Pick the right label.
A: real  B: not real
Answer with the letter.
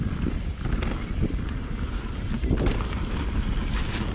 A